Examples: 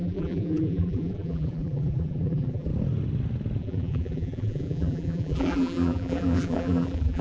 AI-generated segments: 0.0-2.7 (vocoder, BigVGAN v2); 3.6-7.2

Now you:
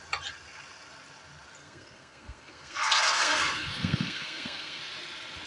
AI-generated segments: 1.6-4.8 (codec, SNAC)

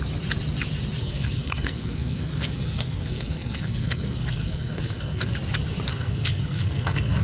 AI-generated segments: 1.0-5.3 (codec, SNAC); 5.9-7.2

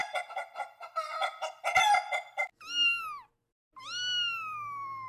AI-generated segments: none

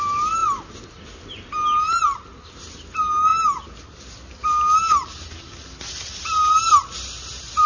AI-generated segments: none

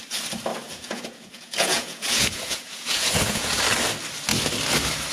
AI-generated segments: 0.5-3.6 (vocoder, Vocos)

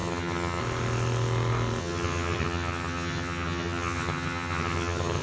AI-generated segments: 0.0-0.6 (vocoder, HiFi-GAN); 1.8-5.2

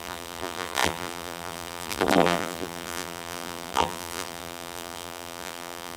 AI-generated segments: 0.0-6.0 (vocoder, BigVGAN v2)